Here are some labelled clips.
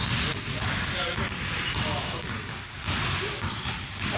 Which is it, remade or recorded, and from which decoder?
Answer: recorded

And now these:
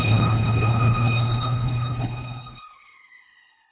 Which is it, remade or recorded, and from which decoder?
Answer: remade, codec, HILCodec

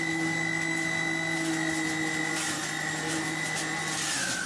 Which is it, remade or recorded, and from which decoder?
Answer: recorded